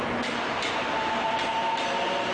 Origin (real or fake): real